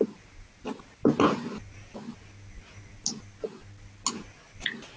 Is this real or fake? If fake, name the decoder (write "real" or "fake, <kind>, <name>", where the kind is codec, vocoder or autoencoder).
real